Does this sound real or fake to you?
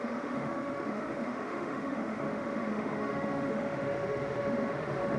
fake